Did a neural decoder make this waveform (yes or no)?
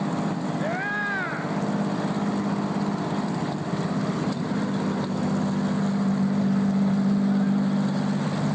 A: no